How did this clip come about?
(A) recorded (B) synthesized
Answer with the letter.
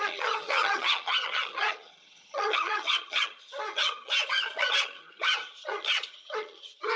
B